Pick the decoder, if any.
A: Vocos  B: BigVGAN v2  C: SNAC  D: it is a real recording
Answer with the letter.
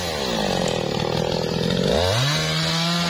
D